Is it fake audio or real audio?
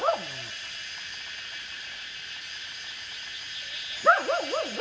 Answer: real